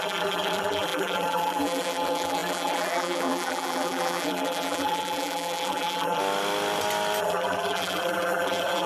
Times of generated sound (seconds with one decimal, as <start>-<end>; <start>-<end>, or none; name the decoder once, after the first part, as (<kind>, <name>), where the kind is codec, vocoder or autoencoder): 0.0-6.2 (vocoder, BigVGAN v2); 7.2-8.9